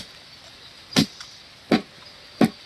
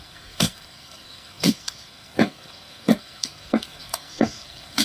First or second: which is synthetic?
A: second